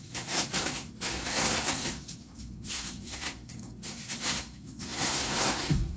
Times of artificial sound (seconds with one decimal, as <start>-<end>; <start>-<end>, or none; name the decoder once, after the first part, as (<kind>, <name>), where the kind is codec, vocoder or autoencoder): 0.0-6.0 (codec, SNAC)